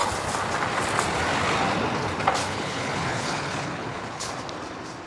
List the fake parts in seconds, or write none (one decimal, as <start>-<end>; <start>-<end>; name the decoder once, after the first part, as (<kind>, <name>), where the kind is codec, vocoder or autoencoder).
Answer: 2.4-4.3 (codec, HILCodec)